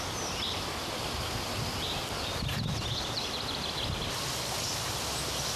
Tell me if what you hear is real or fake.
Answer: real